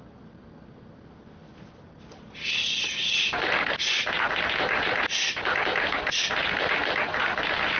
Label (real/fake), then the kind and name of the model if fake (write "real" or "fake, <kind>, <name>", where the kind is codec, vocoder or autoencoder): real